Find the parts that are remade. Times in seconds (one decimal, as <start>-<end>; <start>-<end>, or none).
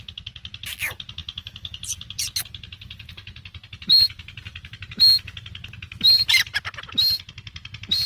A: 1.2-2.2; 3.9-4.7